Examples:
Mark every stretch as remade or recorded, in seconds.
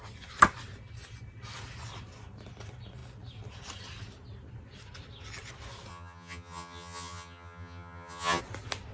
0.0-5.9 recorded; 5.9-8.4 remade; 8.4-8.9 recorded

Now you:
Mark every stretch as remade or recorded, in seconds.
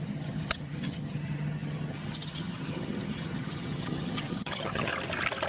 0.0-4.9 remade; 4.9-5.5 recorded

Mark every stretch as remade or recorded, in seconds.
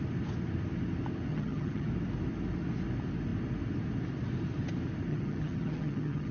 0.0-1.3 recorded; 1.3-1.9 remade; 1.9-5.1 recorded; 5.1-6.3 remade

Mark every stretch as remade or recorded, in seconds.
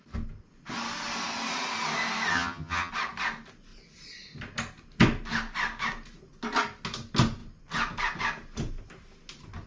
0.0-2.3 recorded; 2.3-2.9 remade; 2.9-9.7 recorded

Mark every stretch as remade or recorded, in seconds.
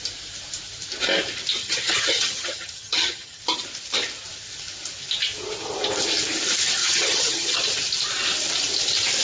0.0-1.6 recorded; 1.6-3.4 remade; 3.4-6.8 recorded; 6.8-7.6 remade; 7.6-9.2 recorded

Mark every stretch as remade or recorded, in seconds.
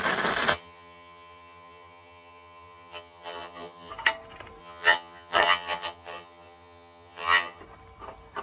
0.0-0.5 recorded; 0.5-3.9 remade; 3.9-4.6 recorded; 4.6-7.6 remade; 7.6-8.4 recorded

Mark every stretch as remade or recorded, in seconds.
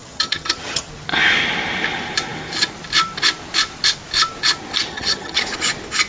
0.0-0.9 remade; 0.9-4.9 recorded; 4.9-5.4 remade; 5.4-6.1 recorded